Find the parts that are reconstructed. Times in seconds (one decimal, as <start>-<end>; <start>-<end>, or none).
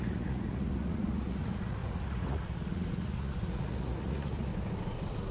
0.0-4.5